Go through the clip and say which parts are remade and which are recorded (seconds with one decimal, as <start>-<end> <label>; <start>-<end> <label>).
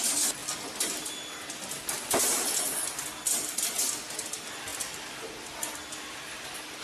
0.0-6.8 recorded